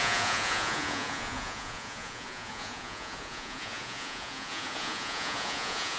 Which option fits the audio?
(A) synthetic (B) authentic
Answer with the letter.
A